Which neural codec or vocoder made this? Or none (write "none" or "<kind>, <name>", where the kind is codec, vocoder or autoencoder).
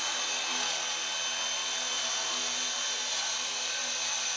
none